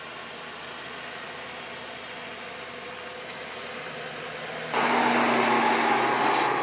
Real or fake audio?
real